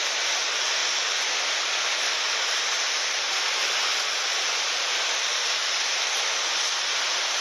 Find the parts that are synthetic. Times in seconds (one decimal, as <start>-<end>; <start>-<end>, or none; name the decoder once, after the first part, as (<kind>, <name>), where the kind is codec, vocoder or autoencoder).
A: 0.8-1.3 (vocoder, BigVGAN v2)